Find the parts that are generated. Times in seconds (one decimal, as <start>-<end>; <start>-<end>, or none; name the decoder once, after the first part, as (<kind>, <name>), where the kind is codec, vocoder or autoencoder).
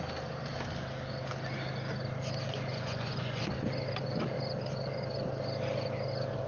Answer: 2.7-3.5 (vocoder, Vocos)